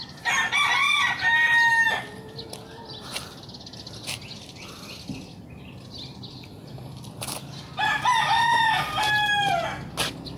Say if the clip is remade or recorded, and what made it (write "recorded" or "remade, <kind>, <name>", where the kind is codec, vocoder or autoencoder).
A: recorded